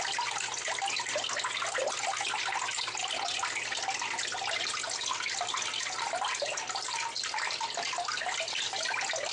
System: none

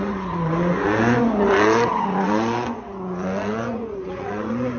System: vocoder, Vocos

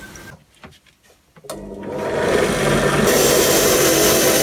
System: none